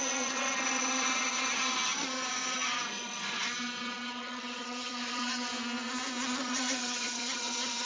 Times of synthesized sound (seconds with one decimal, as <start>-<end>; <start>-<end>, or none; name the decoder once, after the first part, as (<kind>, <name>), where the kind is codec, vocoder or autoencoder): 0.0-5.5 (vocoder, HiFi-GAN); 6.4-7.9